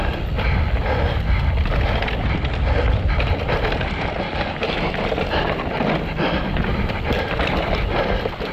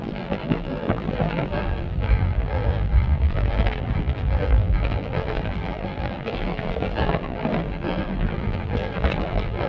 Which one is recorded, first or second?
first